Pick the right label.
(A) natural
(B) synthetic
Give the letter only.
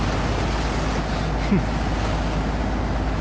A